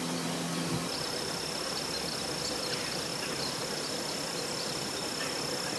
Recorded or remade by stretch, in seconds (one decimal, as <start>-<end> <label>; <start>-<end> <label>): 0.0-5.8 recorded